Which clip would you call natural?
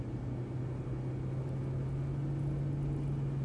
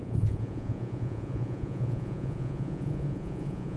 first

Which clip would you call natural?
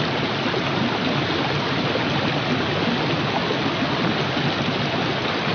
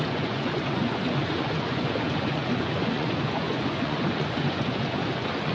first